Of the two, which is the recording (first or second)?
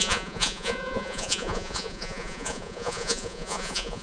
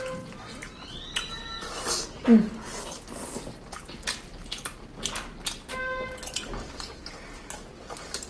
second